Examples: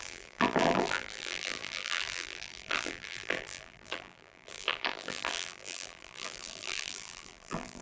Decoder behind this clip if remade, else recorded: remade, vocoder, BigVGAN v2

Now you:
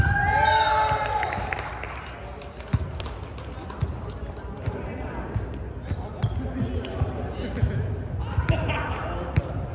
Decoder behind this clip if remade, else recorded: recorded